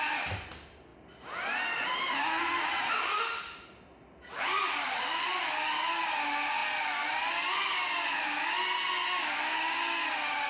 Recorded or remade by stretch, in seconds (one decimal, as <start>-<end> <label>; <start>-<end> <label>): 0.0-10.5 recorded